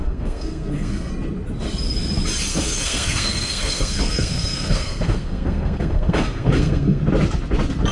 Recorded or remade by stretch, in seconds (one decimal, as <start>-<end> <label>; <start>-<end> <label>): 0.0-1.1 remade; 1.1-2.5 recorded; 2.5-7.0 remade; 7.0-7.9 recorded